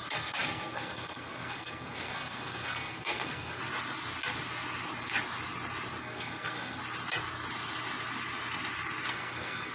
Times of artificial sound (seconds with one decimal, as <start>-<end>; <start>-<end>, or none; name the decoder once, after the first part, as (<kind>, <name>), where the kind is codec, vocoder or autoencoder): 0.0-3.6 (codec, SNAC); 6.0-6.8; 9.1-9.7